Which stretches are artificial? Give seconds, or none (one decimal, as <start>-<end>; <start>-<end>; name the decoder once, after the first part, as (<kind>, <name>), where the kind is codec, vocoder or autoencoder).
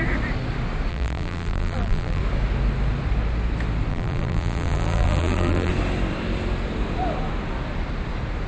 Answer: 0.9-2.2 (vocoder, BigVGAN v2); 3.9-5.7